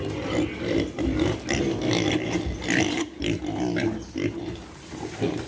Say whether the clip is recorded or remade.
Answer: recorded